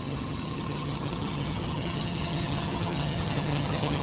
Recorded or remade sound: remade